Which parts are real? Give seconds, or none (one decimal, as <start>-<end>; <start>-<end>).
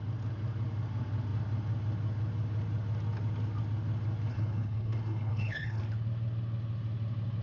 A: 0.0-4.3; 5.8-7.4